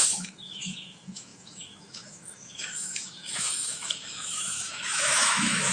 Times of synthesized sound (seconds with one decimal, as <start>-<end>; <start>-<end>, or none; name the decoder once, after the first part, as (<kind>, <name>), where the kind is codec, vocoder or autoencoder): 0.0-5.7 (autoencoder, DAC-VAE)